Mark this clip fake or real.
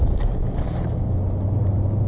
real